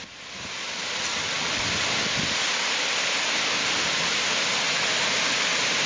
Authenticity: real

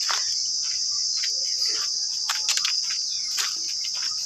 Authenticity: real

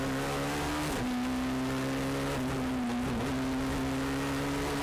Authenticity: real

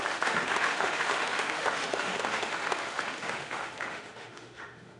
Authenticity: fake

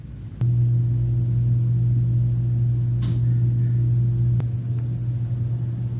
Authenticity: real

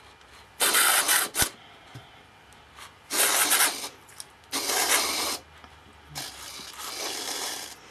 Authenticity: real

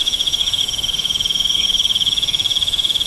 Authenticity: fake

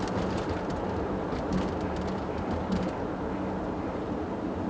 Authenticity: real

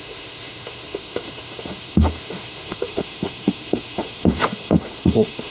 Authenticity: fake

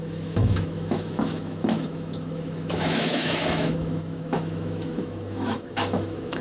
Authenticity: fake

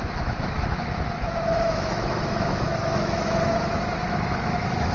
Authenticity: fake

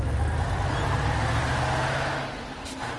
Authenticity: real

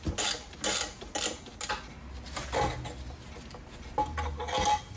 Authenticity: real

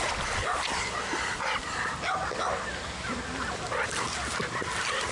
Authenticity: real